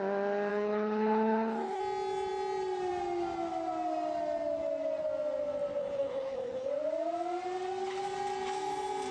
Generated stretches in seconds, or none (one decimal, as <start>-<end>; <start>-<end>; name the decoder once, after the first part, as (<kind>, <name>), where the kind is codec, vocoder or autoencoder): 0.5-1.8 (codec, HILCodec); 5.8-6.7